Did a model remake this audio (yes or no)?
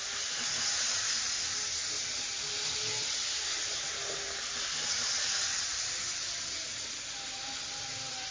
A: no